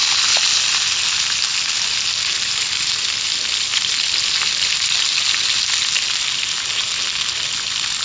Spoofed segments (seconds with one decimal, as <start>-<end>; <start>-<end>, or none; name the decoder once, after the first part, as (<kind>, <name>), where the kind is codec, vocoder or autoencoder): none